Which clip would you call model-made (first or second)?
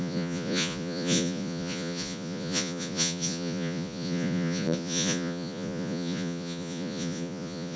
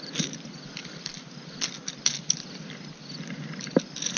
first